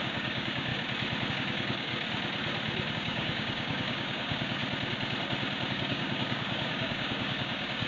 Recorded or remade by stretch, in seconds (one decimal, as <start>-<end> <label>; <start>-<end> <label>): 0.0-0.7 remade; 0.7-1.3 recorded; 1.3-1.9 remade; 1.9-2.9 recorded; 2.9-4.6 remade; 4.6-5.7 recorded; 5.7-7.9 remade